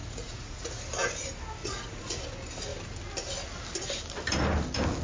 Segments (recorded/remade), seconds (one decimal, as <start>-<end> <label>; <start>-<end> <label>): 0.0-0.8 remade; 0.8-1.6 recorded; 1.6-2.2 remade; 2.2-5.0 recorded